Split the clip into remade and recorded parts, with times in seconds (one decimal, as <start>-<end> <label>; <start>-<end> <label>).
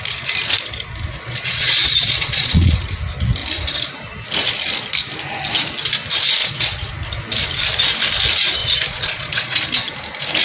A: 0.0-1.1 recorded; 1.1-2.7 remade; 2.7-6.4 recorded; 6.4-6.9 remade; 6.9-8.6 recorded; 8.6-9.6 remade; 9.6-10.4 recorded